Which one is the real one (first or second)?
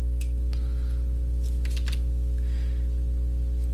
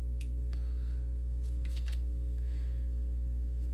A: first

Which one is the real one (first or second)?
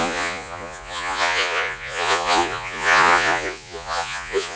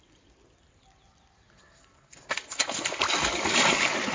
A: second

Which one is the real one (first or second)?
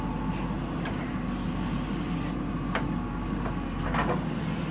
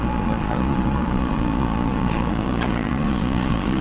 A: first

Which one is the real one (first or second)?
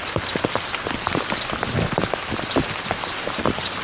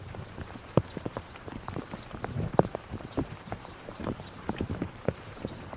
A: first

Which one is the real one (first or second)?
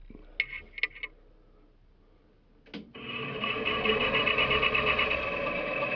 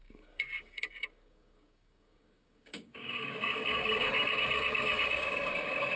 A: first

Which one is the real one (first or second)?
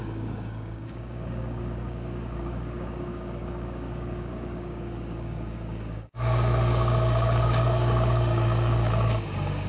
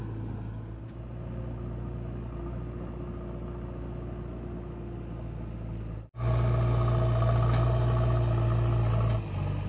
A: second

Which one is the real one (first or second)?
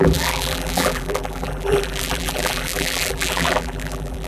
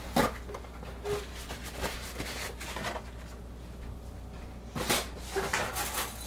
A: second